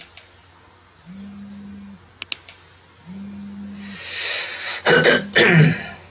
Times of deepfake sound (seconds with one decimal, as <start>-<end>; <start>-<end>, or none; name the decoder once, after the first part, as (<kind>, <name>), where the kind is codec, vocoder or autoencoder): none